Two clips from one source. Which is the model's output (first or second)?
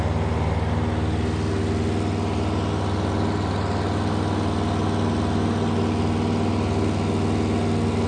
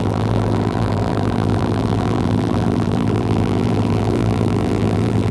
second